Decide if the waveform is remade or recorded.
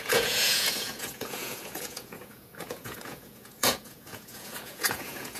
remade